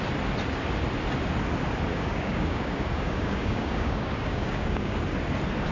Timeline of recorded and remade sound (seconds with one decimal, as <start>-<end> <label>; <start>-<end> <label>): 0.0-1.9 recorded; 1.9-5.0 remade; 5.0-5.7 recorded